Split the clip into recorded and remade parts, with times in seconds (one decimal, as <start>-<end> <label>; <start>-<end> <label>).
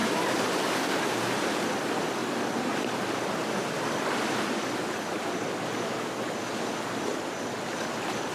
0.0-0.9 remade; 0.9-8.3 recorded